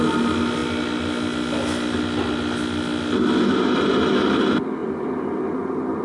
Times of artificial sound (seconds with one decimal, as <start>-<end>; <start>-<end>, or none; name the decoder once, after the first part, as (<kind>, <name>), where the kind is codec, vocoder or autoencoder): none